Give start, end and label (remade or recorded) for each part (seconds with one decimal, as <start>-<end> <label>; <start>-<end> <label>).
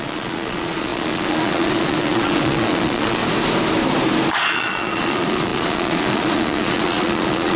0.0-3.2 remade; 3.2-4.3 recorded; 4.3-7.6 remade